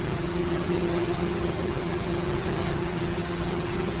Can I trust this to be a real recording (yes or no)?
no